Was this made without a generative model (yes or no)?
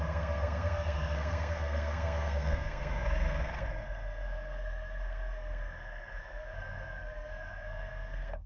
no